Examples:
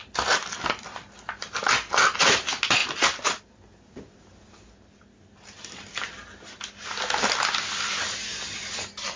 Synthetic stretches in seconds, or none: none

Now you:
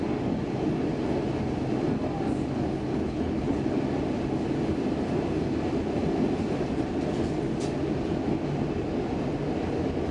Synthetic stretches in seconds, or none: 2.9-3.6 (codec, HILCodec)